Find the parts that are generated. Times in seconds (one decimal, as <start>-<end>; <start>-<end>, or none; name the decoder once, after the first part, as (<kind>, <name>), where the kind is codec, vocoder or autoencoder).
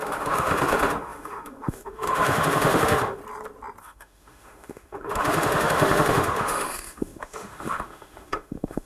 0.0-3.2 (autoencoder, DAC-VAE); 3.8-8.9